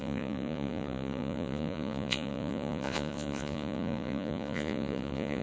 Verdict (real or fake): fake